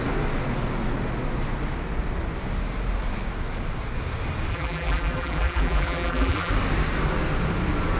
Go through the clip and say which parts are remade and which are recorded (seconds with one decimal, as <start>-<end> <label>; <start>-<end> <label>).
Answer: 0.0-4.5 recorded; 4.5-6.5 remade; 6.5-8.0 recorded